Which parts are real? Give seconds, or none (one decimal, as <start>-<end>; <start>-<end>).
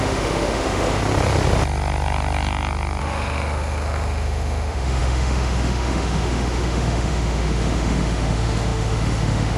1.0-3.0